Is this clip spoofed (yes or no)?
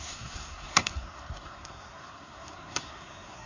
yes